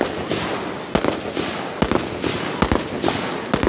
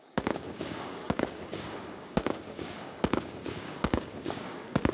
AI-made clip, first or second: second